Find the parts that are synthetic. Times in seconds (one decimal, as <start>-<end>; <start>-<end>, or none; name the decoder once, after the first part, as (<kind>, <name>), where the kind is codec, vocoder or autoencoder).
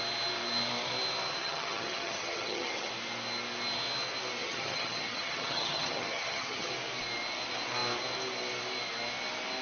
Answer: 1.4-2.9 (vocoder, HiFi-GAN); 4.4-6.7